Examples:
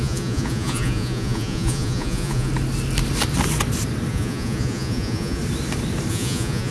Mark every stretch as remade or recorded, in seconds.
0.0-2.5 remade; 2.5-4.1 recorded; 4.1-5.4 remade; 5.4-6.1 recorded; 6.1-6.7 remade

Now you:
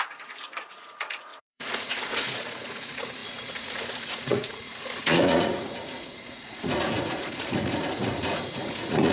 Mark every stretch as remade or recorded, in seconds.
0.0-9.1 remade

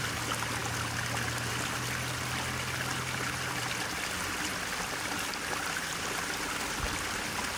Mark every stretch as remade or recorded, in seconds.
0.0-7.6 recorded

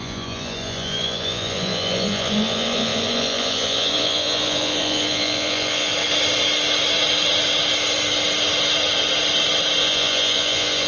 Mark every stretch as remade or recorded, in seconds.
0.0-5.9 remade; 5.9-9.8 recorded; 9.8-10.9 remade